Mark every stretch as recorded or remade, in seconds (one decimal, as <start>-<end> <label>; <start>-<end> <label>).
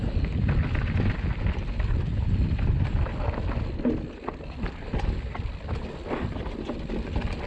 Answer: 0.0-7.5 recorded